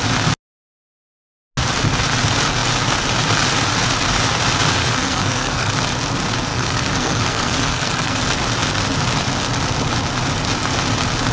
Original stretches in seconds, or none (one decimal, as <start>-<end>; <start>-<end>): 0.0-4.8; 5.7-6.5; 8.2-11.3